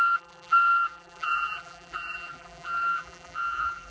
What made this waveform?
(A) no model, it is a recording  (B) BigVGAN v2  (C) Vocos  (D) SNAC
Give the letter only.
B